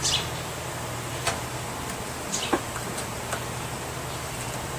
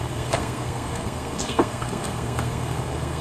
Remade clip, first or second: second